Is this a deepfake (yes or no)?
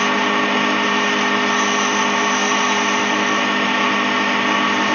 no